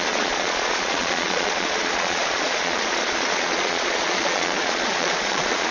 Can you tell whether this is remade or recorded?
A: remade